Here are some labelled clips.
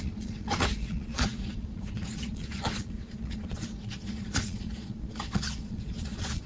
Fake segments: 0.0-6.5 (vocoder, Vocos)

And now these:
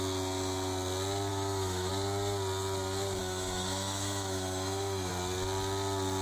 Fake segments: 1.3-1.9 (autoencoder, DAC-VAE); 3.2-5.1

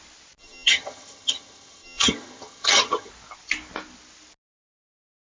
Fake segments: 0.4-3.1 (vocoder, HiFi-GAN)

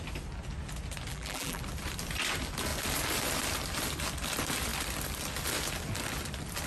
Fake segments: 1.1-1.6 (vocoder, BigVGAN v2)

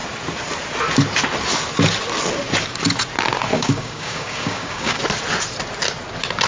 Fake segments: 3.5-5.0 (codec, DAC)

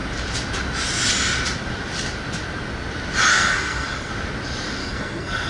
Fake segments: 3.3-4.1 (codec, SNAC); 4.8-5.5